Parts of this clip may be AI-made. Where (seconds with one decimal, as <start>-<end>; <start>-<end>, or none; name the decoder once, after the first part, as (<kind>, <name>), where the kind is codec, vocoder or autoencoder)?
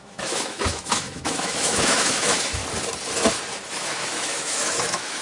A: 0.0-2.6 (autoencoder, DAC-VAE); 3.7-5.2